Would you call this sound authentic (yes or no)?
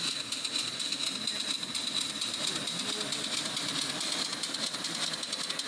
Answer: yes